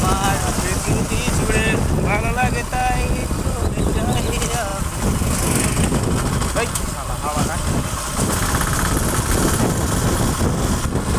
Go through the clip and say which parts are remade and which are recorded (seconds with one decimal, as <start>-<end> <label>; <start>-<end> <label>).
0.0-3.2 recorded; 3.2-4.2 remade; 4.2-4.7 recorded; 4.7-6.0 remade; 6.0-11.2 recorded

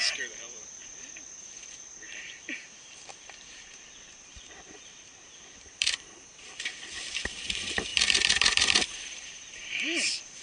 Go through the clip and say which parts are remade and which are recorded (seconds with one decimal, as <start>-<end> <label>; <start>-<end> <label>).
0.0-10.4 remade

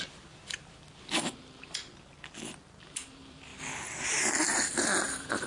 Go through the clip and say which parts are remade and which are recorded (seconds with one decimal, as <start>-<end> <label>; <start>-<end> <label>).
0.0-1.9 remade; 1.9-2.6 recorded; 2.6-3.5 remade; 3.5-4.3 recorded; 4.3-5.5 remade

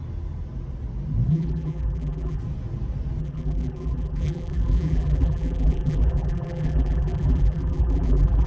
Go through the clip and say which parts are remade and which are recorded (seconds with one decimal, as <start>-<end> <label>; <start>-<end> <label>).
0.0-1.3 recorded; 1.3-2.4 remade; 2.4-3.2 recorded; 3.2-8.5 remade